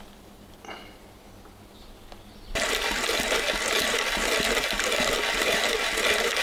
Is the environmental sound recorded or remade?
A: recorded